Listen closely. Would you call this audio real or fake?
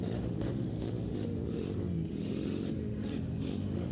fake